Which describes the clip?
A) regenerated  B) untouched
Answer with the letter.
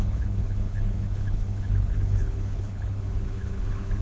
A